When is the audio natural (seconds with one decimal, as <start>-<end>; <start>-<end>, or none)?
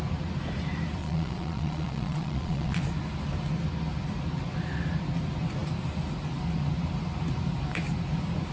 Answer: 0.0-1.0; 2.8-8.5